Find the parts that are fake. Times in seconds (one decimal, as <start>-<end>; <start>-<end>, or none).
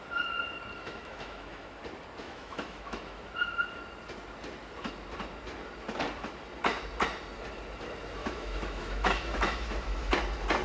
0.8-1.8; 2.2-3.2; 8.2-10.1